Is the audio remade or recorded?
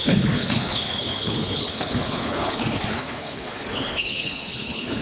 remade